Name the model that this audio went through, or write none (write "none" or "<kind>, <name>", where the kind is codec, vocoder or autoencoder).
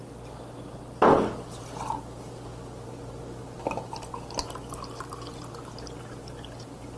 none